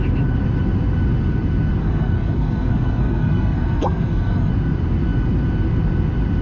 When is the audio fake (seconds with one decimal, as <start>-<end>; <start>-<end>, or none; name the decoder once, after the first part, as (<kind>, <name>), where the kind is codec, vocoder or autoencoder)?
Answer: 1.8-4.5 (codec, SNAC)